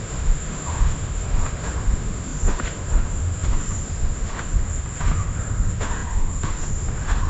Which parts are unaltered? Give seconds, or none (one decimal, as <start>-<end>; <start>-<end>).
none